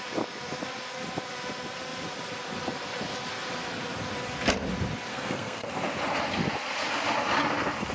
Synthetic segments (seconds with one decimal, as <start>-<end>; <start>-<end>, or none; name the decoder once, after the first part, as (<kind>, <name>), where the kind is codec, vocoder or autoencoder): 5.1-5.7 (codec, SNAC)